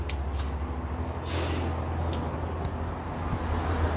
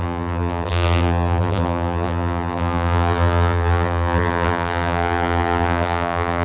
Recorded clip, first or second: first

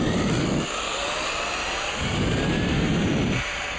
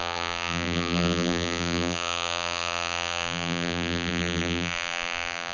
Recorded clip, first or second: first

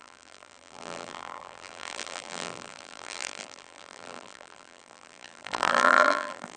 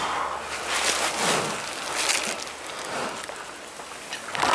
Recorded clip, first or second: second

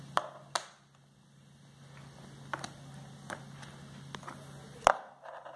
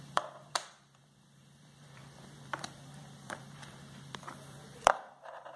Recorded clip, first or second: first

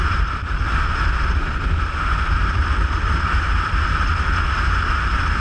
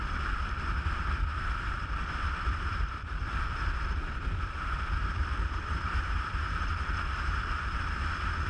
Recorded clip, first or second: first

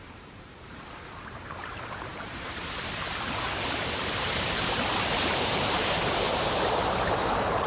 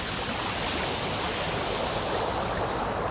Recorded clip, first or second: second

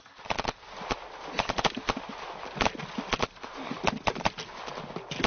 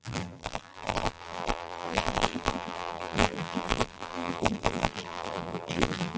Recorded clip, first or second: first